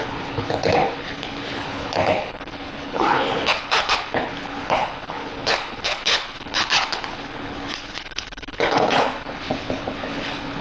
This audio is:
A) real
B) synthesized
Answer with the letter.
B